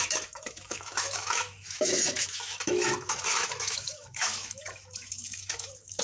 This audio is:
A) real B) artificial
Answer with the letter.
B